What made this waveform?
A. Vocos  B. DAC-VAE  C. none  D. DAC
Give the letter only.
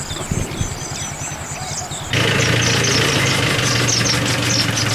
C